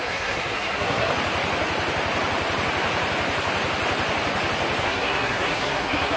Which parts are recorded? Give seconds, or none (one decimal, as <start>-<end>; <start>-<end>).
1.1-4.8